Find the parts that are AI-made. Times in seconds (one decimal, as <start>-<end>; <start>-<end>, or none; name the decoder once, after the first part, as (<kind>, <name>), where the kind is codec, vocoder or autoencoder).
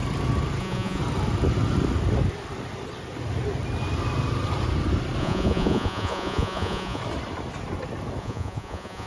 0.6-1.0 (vocoder, Vocos); 5.2-7.0; 8.2-9.1